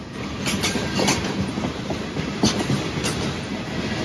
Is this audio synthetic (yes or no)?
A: no